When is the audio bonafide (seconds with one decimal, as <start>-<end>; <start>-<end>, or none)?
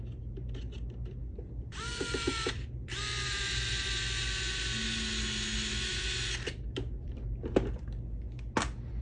0.0-1.2; 3.7-9.0